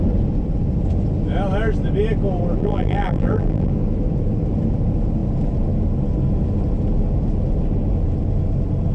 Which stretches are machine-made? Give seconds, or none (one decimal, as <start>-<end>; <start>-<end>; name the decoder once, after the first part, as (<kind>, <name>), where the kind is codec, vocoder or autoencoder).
2.6-3.7 (vocoder, BigVGAN v2)